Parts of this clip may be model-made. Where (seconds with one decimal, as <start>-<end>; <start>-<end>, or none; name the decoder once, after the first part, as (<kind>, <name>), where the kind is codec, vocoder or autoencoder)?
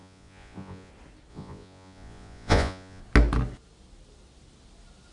0.0-0.9 (vocoder, Vocos); 1.3-3.0